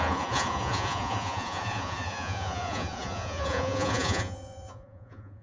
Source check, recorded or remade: remade